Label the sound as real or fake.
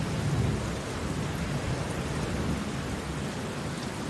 real